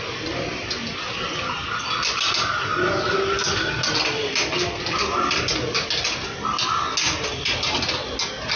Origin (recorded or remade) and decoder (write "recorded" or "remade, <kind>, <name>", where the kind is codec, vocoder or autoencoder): recorded